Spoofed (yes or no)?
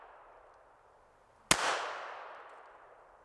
no